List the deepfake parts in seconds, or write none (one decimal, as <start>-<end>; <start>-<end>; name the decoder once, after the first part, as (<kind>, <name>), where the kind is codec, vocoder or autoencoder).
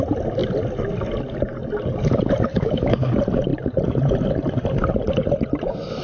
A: 2.5-3.1 (autoencoder, DAC-VAE)